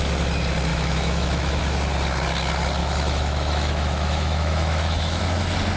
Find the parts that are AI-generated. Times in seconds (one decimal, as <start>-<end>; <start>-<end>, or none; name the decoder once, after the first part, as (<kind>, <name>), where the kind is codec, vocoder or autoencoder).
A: 0.7-1.6 (autoencoder, DAC-VAE); 2.8-5.2